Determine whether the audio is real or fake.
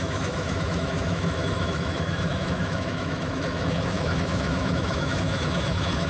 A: fake